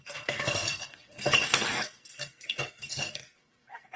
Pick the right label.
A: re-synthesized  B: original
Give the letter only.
A